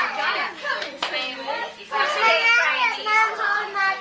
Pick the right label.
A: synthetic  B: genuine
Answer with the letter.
B